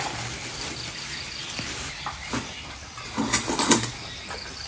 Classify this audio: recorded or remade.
recorded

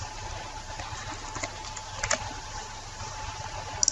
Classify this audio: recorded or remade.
recorded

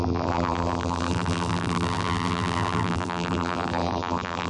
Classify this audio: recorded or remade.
remade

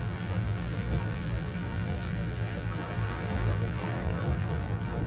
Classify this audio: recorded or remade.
remade